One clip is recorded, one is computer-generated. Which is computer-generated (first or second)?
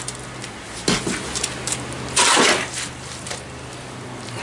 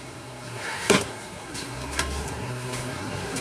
second